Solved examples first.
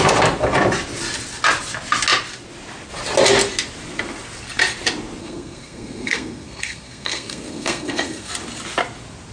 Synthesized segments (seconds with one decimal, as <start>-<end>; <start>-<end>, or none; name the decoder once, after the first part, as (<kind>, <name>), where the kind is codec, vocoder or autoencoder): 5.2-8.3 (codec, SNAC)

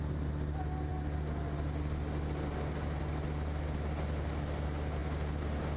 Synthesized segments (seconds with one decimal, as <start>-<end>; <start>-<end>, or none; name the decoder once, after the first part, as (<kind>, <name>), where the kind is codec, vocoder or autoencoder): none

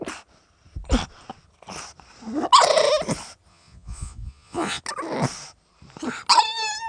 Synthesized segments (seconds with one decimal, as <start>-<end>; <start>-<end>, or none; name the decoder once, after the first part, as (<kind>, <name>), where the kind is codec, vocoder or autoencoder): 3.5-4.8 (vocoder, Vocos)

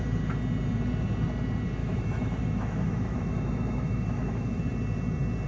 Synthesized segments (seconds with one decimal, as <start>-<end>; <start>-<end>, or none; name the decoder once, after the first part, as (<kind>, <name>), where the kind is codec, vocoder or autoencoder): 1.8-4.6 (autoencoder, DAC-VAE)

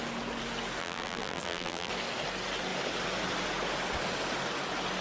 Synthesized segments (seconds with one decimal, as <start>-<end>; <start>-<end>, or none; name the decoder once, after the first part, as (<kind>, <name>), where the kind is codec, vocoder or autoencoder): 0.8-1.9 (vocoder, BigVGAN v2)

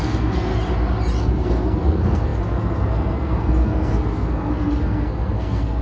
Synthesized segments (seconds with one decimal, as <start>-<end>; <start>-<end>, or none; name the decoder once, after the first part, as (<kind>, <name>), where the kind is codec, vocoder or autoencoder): 0.0-0.5 (codec, SNAC); 1.2-5.8